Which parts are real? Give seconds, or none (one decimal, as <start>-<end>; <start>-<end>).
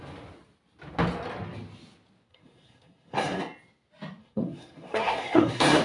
0.0-2.3; 3.4-4.2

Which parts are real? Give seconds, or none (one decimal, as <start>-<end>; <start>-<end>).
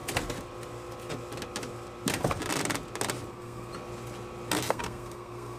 0.0-3.3; 3.7-4.7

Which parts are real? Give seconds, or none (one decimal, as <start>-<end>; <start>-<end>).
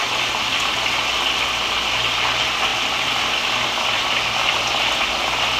0.0-5.6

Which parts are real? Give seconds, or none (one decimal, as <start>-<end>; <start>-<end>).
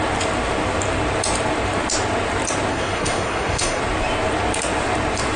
0.0-2.7; 3.8-5.4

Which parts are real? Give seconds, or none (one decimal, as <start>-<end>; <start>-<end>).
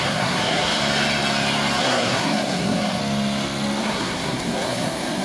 0.8-1.8; 3.0-3.8